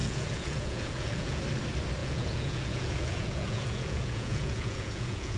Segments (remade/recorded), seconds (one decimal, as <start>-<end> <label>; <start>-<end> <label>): 0.0-1.4 remade; 1.4-2.0 recorded; 2.0-5.4 remade